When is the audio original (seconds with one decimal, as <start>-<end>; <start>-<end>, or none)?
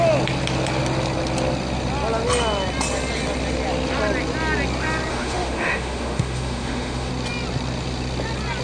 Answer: 0.0-5.1; 7.1-8.6